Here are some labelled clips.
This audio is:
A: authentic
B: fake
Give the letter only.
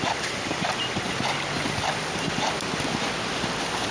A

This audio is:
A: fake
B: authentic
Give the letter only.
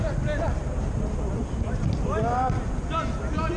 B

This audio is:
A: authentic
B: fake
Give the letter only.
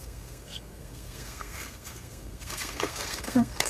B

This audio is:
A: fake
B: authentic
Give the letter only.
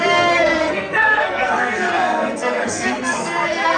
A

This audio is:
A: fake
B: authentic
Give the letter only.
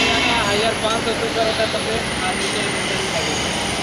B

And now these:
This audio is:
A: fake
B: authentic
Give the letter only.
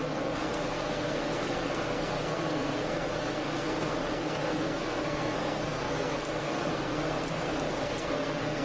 A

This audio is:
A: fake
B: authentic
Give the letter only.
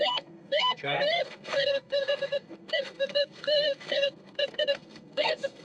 A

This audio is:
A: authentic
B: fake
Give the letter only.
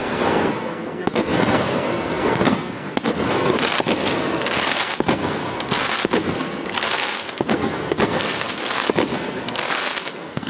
B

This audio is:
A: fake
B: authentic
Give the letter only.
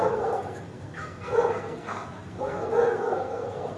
A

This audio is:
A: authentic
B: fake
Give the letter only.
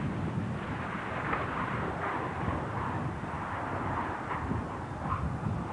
A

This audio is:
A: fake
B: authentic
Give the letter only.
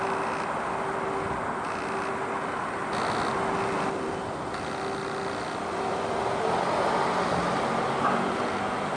B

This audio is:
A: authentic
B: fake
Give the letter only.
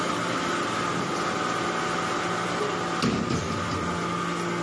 A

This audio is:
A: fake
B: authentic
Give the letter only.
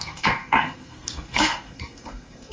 A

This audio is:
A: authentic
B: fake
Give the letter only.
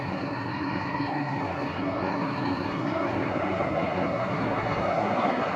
B